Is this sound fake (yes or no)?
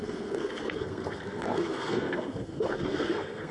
yes